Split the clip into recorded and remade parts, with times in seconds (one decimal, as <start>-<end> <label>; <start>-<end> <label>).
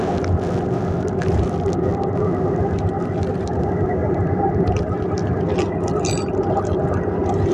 0.0-4.0 recorded; 4.0-4.8 remade; 4.8-7.5 recorded